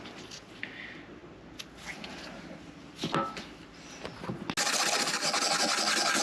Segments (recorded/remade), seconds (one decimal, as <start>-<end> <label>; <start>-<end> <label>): 0.0-6.2 recorded